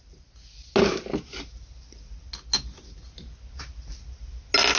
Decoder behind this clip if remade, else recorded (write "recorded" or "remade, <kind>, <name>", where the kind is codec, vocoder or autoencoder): recorded